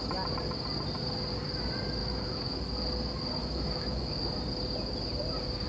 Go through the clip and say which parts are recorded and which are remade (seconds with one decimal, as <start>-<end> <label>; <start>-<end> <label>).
0.0-2.0 recorded; 2.0-2.6 remade; 2.6-3.4 recorded; 3.4-4.2 remade; 4.2-5.7 recorded